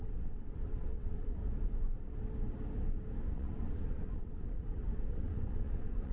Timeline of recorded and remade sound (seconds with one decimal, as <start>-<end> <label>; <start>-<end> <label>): 0.0-1.4 remade; 1.4-3.3 recorded; 3.3-6.1 remade